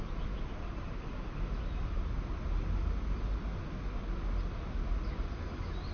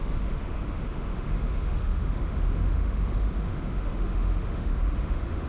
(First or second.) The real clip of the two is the first